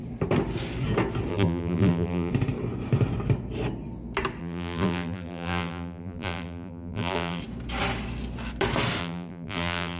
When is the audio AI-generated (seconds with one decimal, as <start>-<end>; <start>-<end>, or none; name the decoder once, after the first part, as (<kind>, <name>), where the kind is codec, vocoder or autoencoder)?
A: 1.3-2.3 (vocoder, BigVGAN v2); 4.4-7.4; 9.0-10.0